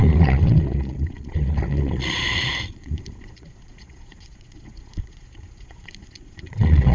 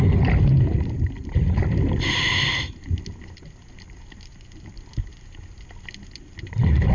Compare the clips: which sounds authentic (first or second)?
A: second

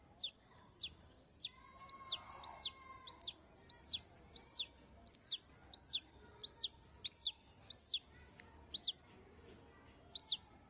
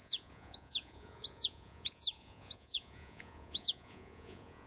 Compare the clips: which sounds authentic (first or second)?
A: first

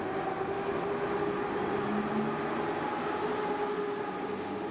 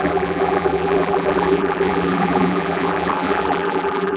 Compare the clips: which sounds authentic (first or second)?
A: first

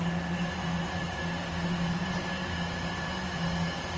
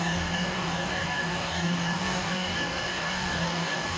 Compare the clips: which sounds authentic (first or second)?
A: first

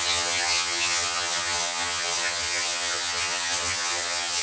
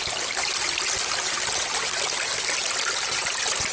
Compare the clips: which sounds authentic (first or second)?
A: second